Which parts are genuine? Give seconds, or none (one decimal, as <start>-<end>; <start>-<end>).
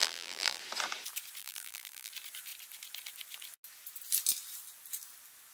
0.6-1.4; 2.1-5.5